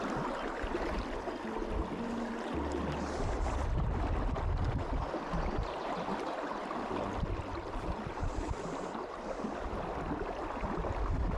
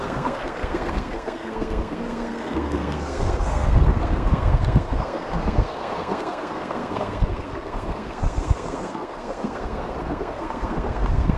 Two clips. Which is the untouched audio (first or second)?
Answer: first